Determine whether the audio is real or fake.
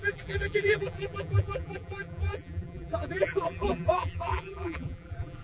fake